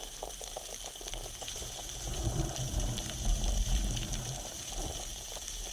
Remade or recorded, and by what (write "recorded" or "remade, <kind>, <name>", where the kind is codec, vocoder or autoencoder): remade, vocoder, BigVGAN v2